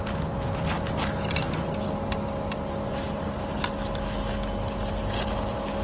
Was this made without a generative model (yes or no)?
yes